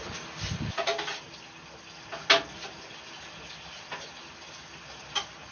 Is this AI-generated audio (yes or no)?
no